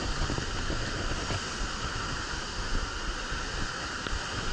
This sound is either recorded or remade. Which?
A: recorded